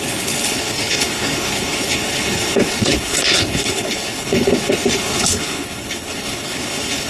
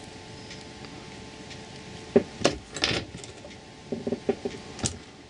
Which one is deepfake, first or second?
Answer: first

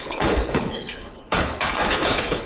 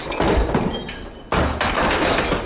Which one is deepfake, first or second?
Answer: first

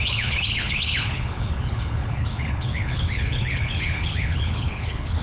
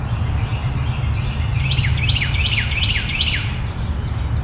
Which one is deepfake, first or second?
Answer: first